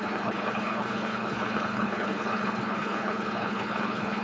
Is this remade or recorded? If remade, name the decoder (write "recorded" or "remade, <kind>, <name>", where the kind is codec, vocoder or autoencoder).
remade, codec, HILCodec